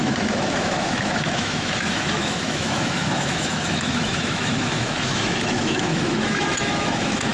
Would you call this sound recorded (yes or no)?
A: no